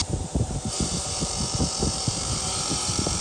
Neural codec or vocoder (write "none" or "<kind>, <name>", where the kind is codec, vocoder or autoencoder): vocoder, BigVGAN v2